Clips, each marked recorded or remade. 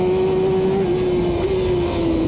recorded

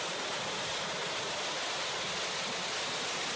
recorded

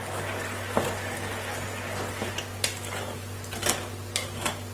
recorded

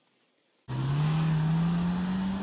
recorded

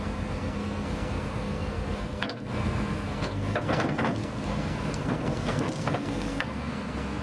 remade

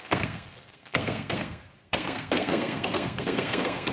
remade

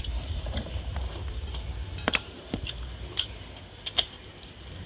remade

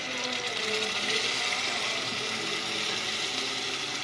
recorded